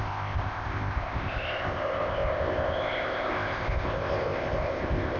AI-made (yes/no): yes